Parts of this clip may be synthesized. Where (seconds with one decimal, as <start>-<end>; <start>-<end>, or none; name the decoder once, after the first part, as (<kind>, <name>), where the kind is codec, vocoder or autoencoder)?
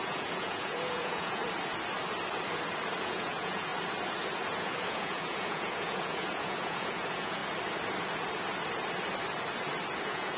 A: 0.0-1.4 (vocoder, Vocos); 3.0-3.7; 4.3-7.4; 10.0-10.4